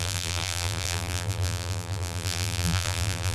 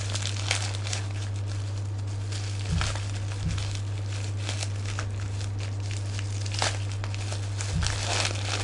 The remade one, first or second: first